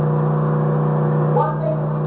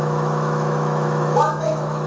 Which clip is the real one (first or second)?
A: first